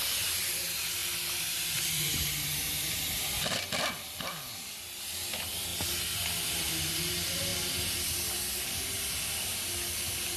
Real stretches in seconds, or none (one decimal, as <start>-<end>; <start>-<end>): 0.0-10.4